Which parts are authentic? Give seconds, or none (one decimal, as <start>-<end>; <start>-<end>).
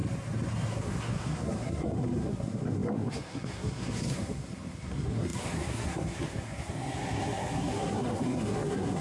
0.0-0.7